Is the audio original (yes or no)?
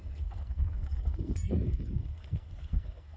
no